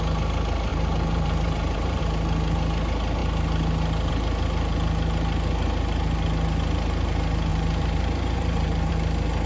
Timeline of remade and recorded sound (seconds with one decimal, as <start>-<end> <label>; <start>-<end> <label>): 0.0-0.7 recorded; 0.7-2.0 remade; 2.0-7.5 recorded; 7.5-8.9 remade; 8.9-9.5 recorded